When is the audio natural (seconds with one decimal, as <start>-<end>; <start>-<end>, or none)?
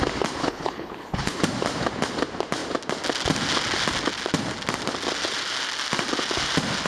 0.0-0.4; 1.4-6.9